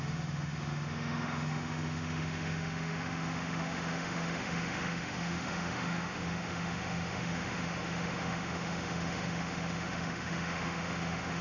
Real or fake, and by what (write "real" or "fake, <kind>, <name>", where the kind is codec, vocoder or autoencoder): fake, autoencoder, DAC-VAE